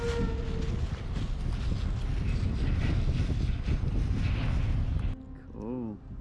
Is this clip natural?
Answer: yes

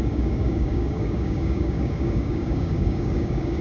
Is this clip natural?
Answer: no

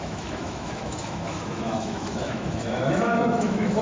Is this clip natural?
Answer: no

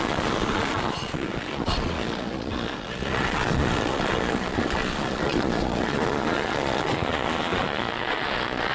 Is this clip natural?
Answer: no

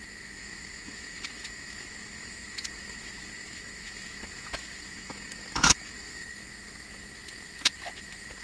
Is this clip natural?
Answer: no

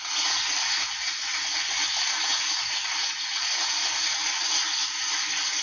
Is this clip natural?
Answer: yes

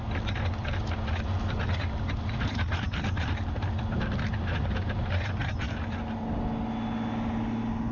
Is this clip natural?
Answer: yes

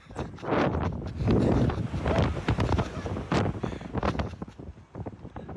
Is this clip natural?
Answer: no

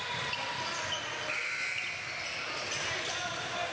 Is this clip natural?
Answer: yes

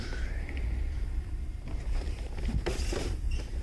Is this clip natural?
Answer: no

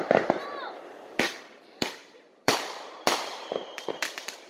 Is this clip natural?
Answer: no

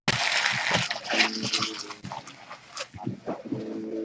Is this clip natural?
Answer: yes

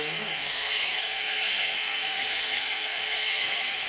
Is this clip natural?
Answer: no